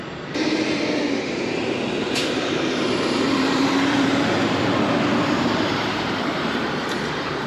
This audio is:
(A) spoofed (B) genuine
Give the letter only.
A